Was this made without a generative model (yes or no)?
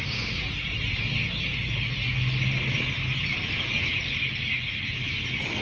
yes